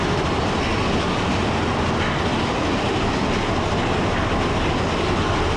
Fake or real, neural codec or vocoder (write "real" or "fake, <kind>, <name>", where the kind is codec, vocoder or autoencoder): real